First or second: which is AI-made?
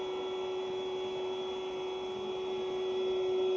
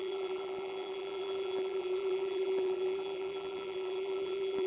second